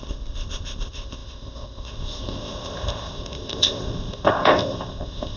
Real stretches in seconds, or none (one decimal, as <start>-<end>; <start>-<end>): none